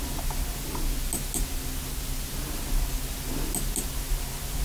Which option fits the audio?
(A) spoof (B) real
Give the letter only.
B